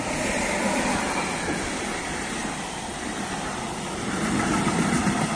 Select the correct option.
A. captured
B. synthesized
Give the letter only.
A